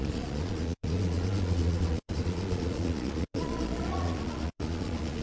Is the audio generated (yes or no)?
yes